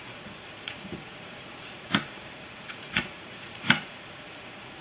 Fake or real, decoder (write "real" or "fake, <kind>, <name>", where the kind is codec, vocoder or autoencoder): fake, vocoder, Vocos